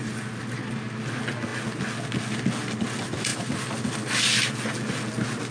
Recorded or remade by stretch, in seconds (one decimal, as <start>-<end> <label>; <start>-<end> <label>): 0.0-5.5 recorded